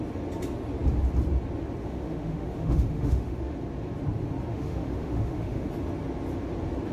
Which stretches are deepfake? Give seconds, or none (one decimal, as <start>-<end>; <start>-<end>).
1.8-3.5; 4.5-5.7